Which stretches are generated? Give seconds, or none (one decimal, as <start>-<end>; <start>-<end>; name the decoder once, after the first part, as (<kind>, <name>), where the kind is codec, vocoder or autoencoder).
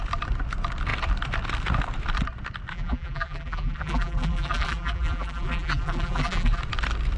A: 2.7-6.6 (vocoder, BigVGAN v2)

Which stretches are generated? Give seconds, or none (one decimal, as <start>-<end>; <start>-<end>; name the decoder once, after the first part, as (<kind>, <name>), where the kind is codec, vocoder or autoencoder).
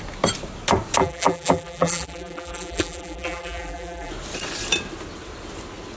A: 1.0-4.1 (vocoder, BigVGAN v2)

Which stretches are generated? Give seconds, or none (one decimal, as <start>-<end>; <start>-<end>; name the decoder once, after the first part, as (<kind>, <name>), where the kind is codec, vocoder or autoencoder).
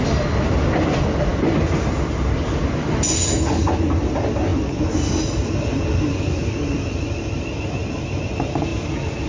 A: 8.7-9.3 (vocoder, BigVGAN v2)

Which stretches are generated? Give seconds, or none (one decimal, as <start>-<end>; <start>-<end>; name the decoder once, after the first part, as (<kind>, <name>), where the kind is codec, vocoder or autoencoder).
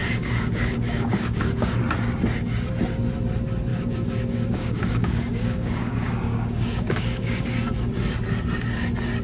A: 0.0-1.8 (codec, DAC); 3.7-7.7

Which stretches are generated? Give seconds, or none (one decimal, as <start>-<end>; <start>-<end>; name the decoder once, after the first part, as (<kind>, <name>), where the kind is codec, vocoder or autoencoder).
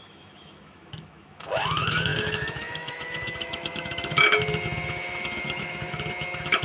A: 0.0-6.6 (autoencoder, DAC-VAE)